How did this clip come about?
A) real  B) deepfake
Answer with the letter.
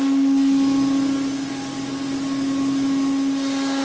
A